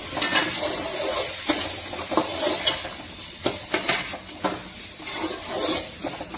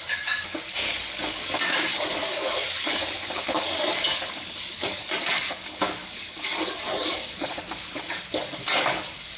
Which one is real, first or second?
first